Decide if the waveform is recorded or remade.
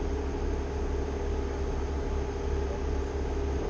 recorded